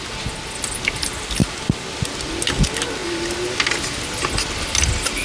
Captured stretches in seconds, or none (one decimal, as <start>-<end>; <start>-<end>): 0.0-5.2